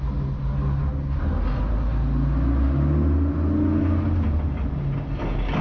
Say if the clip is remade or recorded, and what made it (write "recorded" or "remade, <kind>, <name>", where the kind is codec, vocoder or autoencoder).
recorded